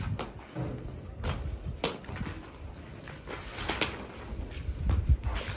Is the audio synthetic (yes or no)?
no